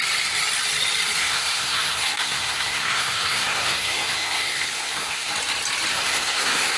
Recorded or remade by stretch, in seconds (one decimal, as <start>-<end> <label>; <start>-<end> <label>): 0.0-1.2 recorded; 1.2-5.3 remade; 5.3-5.9 recorded; 5.9-6.8 remade